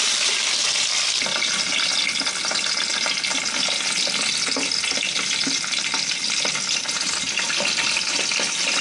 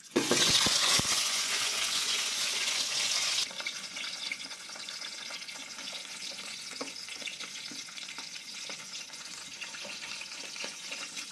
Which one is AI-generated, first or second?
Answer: second